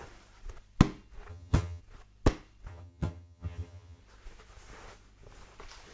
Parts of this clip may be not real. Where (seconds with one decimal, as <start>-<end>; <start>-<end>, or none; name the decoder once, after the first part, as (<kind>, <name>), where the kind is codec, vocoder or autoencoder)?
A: 1.3-1.8 (vocoder, HiFi-GAN); 2.7-4.0